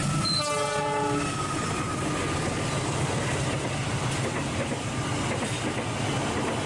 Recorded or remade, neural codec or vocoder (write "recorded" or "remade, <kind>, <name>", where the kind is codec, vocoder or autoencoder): recorded